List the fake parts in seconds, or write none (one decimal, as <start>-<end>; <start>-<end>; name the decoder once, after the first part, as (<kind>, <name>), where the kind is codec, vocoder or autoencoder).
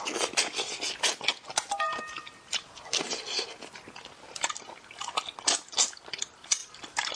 6.6-7.2 (vocoder, BigVGAN v2)